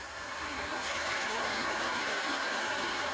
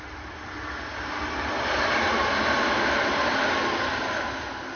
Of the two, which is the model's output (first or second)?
first